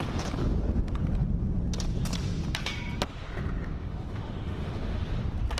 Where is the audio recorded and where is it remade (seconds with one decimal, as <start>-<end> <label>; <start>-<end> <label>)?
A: 0.0-3.8 recorded; 3.8-5.0 remade; 5.0-5.6 recorded